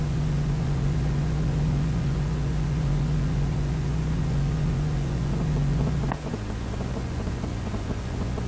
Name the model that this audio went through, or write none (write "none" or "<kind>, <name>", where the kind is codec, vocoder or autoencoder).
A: vocoder, Vocos